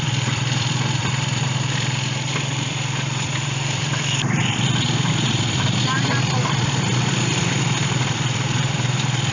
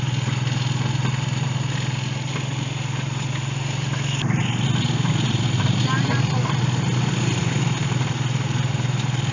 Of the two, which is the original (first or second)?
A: second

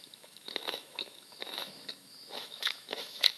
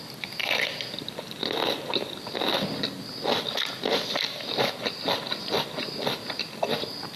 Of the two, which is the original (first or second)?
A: second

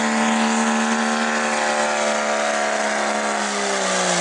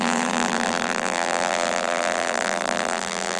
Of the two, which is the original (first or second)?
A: first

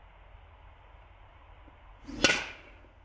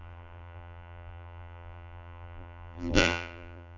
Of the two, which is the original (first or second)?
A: first